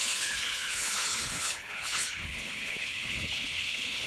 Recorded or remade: remade